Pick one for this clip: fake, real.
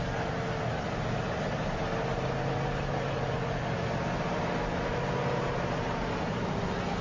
real